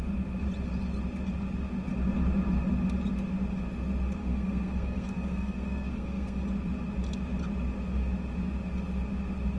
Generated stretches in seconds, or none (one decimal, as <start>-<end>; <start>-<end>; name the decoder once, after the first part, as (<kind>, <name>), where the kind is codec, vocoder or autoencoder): 4.2-6.4 (codec, SNAC)